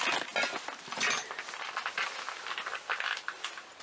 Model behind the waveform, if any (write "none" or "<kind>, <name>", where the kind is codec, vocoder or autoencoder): none